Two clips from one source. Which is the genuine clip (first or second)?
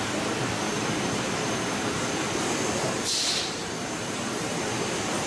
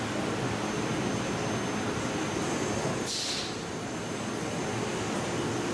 second